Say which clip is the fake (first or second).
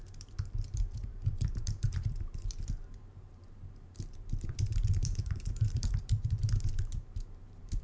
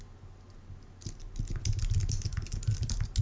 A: first